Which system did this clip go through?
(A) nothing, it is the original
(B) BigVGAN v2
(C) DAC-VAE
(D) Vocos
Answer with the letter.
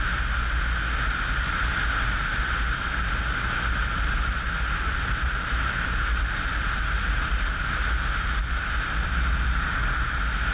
A